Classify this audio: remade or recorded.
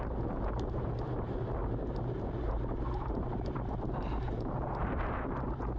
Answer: remade